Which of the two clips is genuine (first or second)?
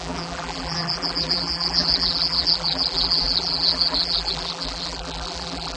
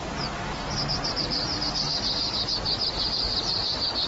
second